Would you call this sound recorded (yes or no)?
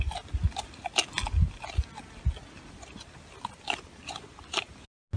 yes